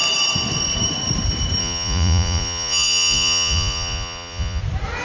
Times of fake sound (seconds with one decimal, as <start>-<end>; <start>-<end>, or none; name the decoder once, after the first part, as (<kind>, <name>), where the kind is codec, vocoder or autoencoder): 1.6-4.6 (vocoder, Vocos)